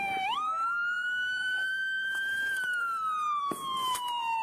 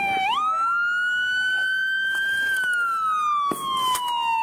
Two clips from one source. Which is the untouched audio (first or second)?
second